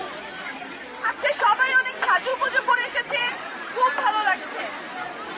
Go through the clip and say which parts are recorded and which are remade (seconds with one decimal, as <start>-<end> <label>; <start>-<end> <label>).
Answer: 0.0-0.5 recorded; 0.5-1.1 remade; 1.1-2.3 recorded; 2.3-4.6 remade; 4.6-5.4 recorded